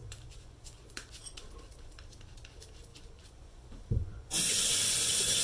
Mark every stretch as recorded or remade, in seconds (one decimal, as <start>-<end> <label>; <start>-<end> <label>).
0.0-1.2 remade; 1.2-2.9 recorded; 2.9-5.4 remade